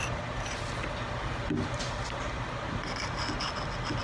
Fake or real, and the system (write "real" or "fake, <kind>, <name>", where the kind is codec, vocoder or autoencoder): real